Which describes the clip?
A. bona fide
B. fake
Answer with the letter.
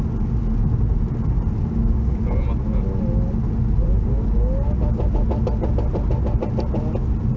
A